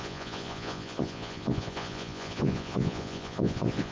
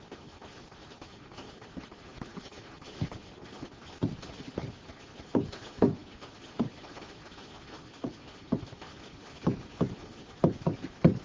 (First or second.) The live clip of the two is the second